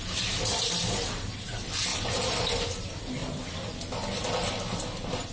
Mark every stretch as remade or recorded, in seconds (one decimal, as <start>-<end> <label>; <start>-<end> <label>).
0.0-5.3 recorded